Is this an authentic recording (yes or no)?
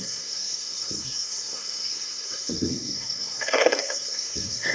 no